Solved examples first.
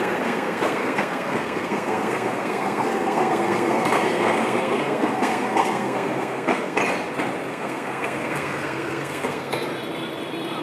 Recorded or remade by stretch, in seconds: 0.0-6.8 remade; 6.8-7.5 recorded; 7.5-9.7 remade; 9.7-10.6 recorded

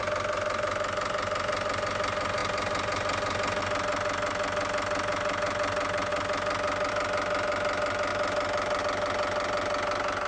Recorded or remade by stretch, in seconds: 0.0-10.3 recorded

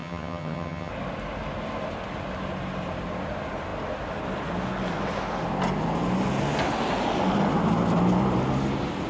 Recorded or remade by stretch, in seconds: 0.0-0.9 remade; 0.9-9.1 recorded

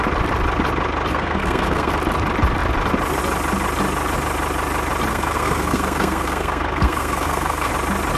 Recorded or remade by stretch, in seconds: 0.0-1.1 recorded; 1.1-1.9 remade; 1.9-5.1 recorded; 5.1-7.7 remade; 7.7-8.2 recorded

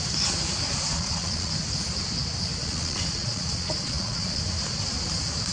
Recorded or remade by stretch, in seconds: 0.0-0.9 recorded; 0.9-1.5 remade; 1.5-2.6 recorded; 2.6-4.4 remade; 4.4-5.5 recorded